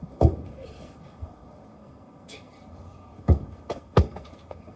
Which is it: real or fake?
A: fake